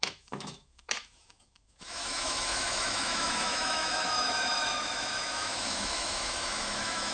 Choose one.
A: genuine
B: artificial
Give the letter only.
B